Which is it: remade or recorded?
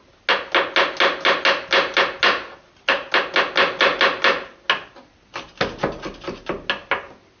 recorded